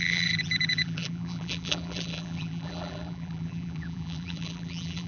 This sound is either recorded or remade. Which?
remade